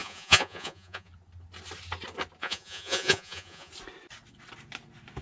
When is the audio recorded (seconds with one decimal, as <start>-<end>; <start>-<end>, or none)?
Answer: 1.1-2.4; 3.7-5.2

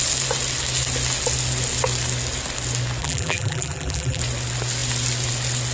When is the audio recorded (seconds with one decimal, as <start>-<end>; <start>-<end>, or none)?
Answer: 0.0-3.0; 4.2-5.7

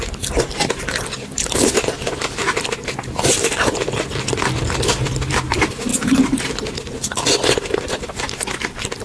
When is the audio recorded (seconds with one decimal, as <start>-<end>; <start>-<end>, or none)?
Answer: 0.0-9.0

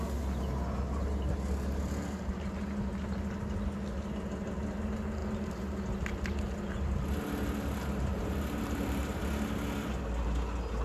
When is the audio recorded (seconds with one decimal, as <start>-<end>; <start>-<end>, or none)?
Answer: 0.0-8.1; 9.2-10.8

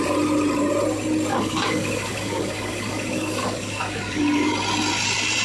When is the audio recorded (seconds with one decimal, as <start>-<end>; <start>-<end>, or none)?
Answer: 0.0-1.3; 4.5-5.4